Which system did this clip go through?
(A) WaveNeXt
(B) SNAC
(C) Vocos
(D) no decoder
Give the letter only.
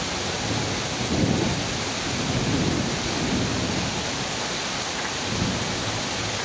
D